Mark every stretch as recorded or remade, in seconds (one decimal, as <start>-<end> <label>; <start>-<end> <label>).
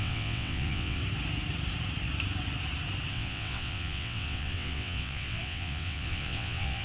0.0-1.0 remade; 1.0-3.1 recorded; 3.1-6.8 remade